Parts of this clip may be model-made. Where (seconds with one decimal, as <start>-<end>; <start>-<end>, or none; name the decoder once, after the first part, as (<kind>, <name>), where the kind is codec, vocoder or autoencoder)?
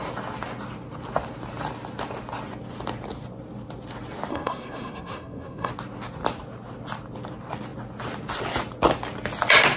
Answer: 4.3-5.7 (codec, SNAC)